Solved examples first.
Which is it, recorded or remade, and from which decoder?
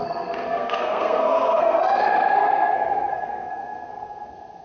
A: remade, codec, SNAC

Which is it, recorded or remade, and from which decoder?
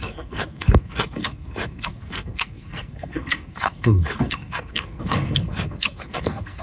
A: remade, codec, SNAC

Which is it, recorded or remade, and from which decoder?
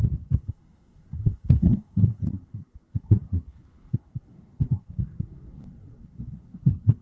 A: remade, codec, SNAC